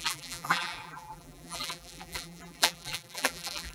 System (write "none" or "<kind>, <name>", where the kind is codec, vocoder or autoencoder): vocoder, BigVGAN v2